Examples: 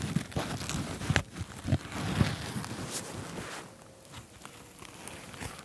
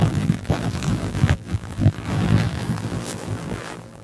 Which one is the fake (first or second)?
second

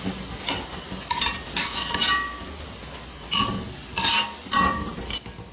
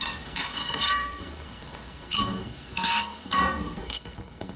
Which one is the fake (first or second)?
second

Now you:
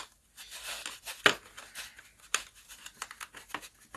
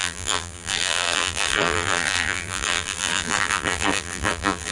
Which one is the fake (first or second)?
second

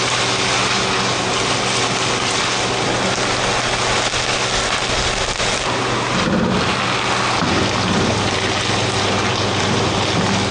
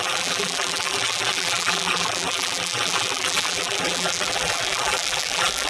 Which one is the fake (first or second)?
second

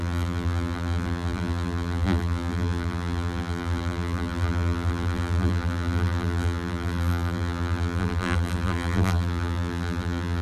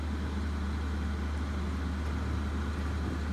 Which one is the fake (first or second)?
first